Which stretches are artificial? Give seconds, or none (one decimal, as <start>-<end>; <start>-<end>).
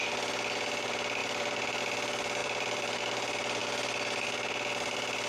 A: 1.2-1.8; 2.4-3.0